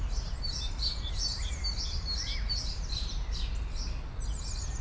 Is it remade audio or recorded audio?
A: recorded